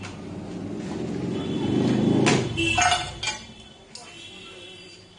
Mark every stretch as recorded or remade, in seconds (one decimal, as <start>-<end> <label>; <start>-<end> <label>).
0.0-5.2 recorded